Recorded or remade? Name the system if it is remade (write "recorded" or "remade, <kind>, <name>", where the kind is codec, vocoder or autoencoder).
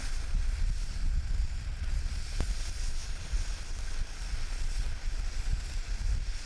recorded